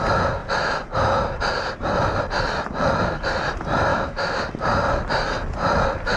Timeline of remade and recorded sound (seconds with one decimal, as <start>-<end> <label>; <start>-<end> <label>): 0.0-3.9 recorded; 3.9-4.4 remade; 4.4-6.2 recorded